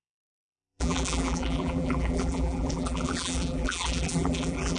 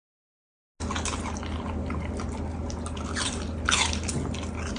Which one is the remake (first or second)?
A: first